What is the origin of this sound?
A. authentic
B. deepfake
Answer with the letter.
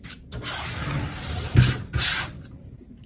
B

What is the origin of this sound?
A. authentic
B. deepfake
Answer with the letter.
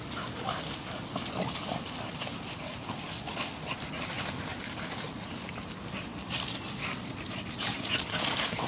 A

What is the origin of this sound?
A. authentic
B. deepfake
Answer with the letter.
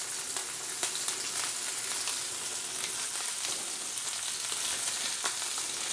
A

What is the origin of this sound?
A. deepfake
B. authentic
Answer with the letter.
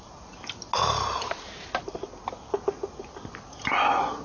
B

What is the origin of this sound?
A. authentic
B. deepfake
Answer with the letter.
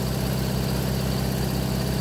A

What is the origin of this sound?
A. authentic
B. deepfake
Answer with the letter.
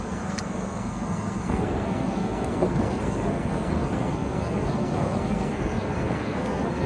B